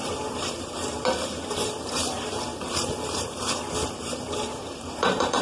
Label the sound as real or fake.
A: fake